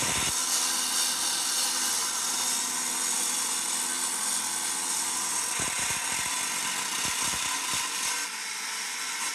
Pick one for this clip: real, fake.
real